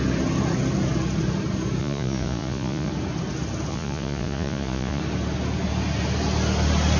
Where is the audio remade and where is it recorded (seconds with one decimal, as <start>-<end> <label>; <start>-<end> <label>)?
0.0-1.8 recorded; 1.8-2.9 remade; 2.9-3.7 recorded; 3.7-5.0 remade; 5.0-7.0 recorded